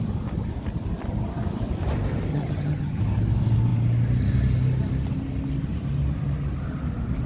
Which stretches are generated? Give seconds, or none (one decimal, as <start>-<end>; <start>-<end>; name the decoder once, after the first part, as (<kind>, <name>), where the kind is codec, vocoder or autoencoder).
2.3-3.0 (vocoder, HiFi-GAN)